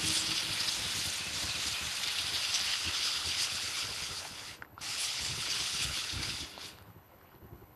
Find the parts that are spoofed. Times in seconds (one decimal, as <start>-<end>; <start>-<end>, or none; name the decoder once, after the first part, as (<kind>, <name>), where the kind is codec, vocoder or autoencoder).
2.7-7.8 (codec, HILCodec)